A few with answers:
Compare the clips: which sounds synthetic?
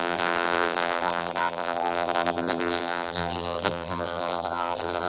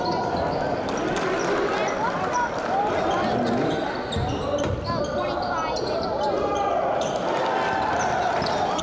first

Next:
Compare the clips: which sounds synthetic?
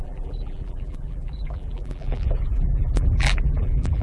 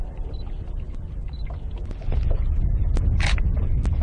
first